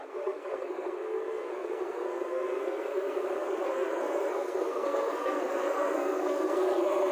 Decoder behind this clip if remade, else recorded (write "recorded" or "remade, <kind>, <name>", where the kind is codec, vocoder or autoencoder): remade, codec, SNAC